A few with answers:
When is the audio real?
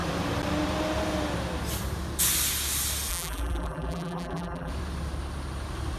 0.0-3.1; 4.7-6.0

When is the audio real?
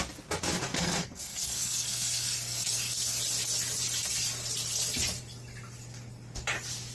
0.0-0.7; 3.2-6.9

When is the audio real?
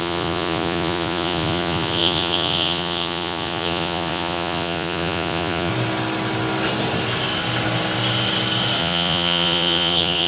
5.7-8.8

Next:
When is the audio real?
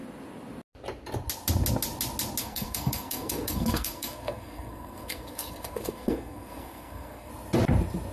0.0-2.4; 7.3-8.1